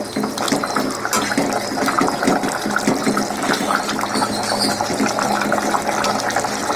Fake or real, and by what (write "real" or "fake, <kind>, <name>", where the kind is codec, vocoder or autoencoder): real